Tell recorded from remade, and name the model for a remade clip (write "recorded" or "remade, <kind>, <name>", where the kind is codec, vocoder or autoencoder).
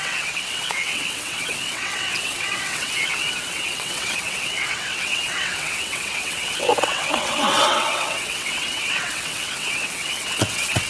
remade, vocoder, WaveNeXt